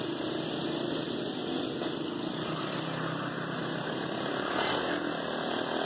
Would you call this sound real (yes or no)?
yes